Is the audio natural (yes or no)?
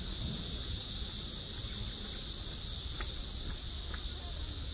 yes